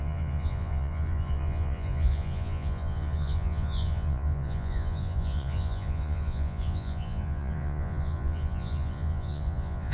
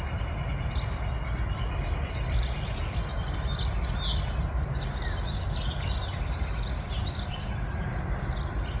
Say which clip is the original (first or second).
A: second